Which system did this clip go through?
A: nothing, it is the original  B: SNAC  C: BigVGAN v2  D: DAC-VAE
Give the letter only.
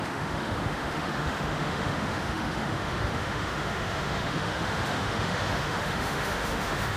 D